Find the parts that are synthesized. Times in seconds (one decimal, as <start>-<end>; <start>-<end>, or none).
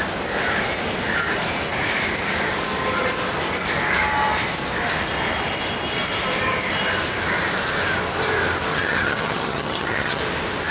8.7-10.2